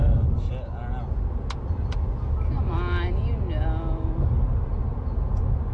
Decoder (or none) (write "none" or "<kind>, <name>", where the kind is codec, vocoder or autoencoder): none